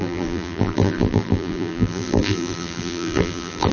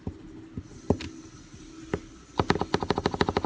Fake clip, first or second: first